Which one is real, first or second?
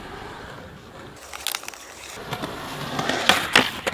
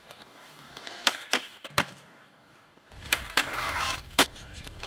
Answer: first